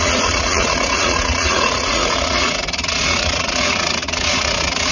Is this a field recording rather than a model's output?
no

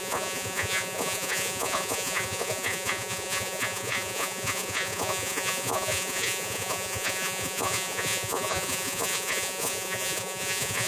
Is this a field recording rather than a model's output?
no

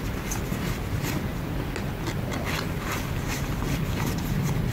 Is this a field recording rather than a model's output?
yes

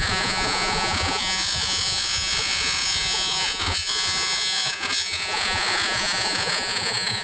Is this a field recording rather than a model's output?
no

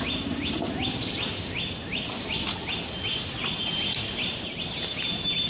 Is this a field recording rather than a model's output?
yes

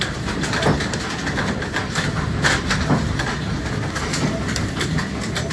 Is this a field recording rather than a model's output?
yes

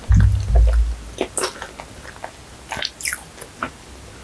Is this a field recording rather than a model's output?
yes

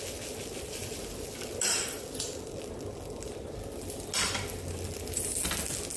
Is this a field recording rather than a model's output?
yes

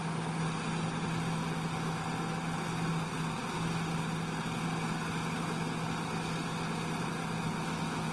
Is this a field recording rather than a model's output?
yes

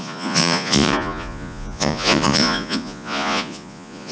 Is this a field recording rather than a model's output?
no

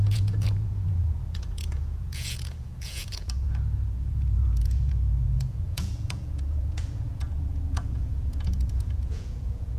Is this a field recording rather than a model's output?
no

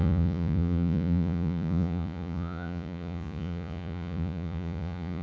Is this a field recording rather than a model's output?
no